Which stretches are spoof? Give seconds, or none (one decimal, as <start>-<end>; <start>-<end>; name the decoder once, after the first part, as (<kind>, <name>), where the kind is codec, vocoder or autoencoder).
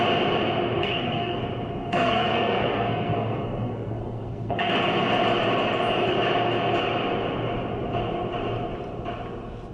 0.8-1.4 (codec, SNAC); 1.8-4.7